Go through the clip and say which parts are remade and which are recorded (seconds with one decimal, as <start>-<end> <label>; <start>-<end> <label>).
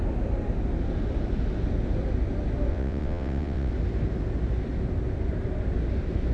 0.0-2.7 recorded; 2.7-3.7 remade; 3.7-6.3 recorded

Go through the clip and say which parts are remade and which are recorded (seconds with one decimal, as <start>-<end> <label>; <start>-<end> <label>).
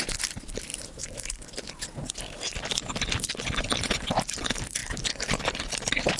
0.0-0.7 recorded; 0.7-1.6 remade; 1.6-4.8 recorded; 4.8-5.6 remade; 5.6-6.2 recorded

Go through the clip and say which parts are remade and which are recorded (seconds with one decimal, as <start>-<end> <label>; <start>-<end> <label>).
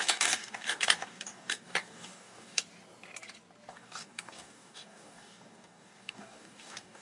0.0-2.6 remade; 2.6-3.7 recorded; 3.7-7.0 remade